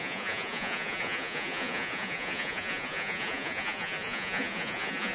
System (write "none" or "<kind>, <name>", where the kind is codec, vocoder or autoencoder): vocoder, Vocos